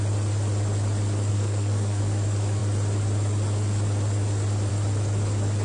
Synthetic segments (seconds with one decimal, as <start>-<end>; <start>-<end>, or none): 1.3-2.0